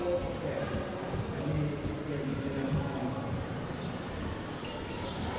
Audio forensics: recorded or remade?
recorded